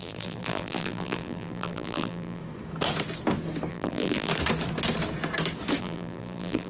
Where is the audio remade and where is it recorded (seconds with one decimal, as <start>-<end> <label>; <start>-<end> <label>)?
0.0-2.4 remade; 2.4-3.7 recorded; 3.7-4.3 remade; 4.3-5.8 recorded; 5.8-6.7 remade